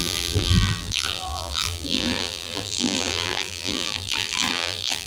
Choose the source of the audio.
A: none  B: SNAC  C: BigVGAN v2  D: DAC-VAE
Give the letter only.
C